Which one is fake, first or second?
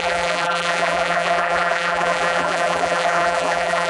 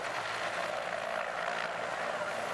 first